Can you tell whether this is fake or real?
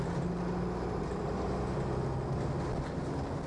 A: real